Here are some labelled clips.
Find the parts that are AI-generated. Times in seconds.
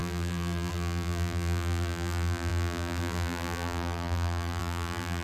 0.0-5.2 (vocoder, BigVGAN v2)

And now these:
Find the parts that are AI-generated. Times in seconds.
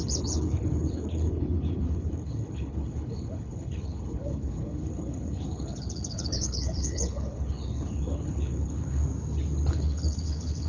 0.0-9.0 (codec, HILCodec); 9.7-10.7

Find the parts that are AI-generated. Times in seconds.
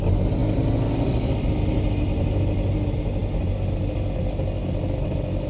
none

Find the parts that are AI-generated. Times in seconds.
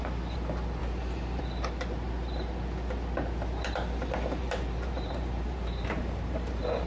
0.8-1.4 (vocoder, BigVGAN v2); 4.4-6.9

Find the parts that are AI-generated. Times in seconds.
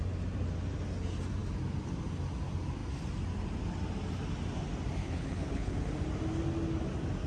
5.0-5.9 (codec, HILCodec)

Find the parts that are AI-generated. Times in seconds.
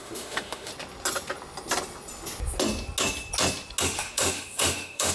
0.0-0.7 (autoencoder, DAC-VAE); 3.8-5.1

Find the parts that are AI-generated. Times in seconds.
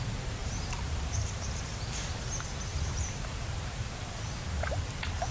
0.4-2.1 (vocoder, BigVGAN v2); 2.7-4.2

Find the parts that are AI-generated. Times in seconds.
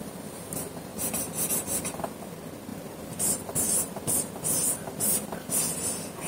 0.9-1.5 (vocoder, BigVGAN v2); 2.7-5.5